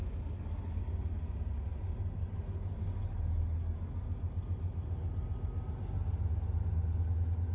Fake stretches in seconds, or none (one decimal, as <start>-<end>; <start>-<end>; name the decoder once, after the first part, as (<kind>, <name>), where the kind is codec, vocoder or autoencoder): none

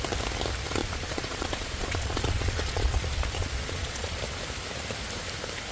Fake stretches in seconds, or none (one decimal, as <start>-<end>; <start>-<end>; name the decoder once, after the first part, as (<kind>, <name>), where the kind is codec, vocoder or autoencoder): 0.8-4.2 (vocoder, Vocos)

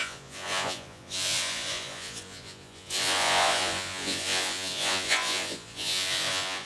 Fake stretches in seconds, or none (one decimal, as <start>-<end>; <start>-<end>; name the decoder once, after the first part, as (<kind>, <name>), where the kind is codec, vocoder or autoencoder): 0.0-6.7 (vocoder, Vocos)

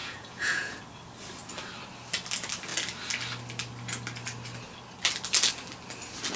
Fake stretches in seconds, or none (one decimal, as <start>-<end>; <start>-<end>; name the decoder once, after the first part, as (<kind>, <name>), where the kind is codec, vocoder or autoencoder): 0.0-0.8 (vocoder, Vocos)